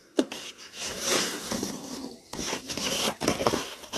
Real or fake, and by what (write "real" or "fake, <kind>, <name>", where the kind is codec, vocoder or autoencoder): fake, codec, SNAC